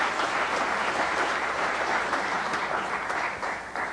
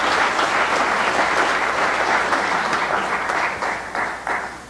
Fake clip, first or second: first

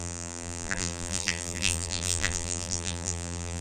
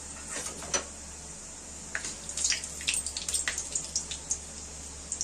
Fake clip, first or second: first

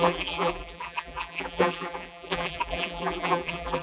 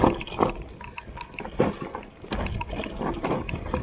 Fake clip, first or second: first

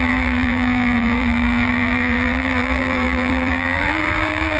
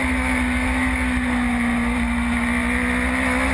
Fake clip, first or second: first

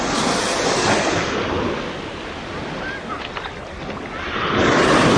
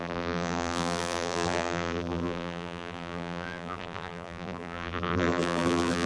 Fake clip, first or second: second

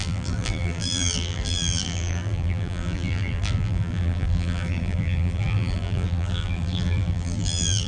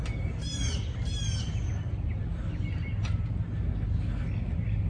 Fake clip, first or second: first